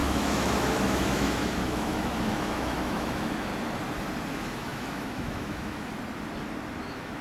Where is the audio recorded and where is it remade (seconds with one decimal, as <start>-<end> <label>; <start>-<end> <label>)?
0.0-3.5 remade; 3.5-4.3 recorded; 4.3-5.9 remade; 5.9-6.8 recorded; 6.8-7.2 remade